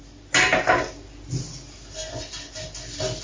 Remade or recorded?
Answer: recorded